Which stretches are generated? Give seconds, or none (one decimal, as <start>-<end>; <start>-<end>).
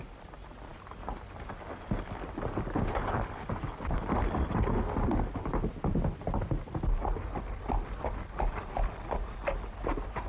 none